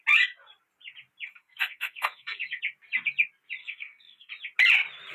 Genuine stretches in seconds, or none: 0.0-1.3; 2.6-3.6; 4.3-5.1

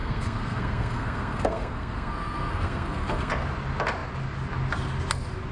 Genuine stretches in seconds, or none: 3.3-5.5

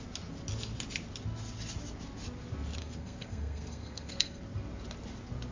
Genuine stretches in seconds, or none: 0.0-2.8; 4.4-5.5

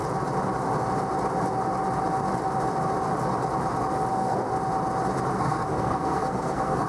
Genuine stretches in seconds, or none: 0.0-4.1; 4.5-5.3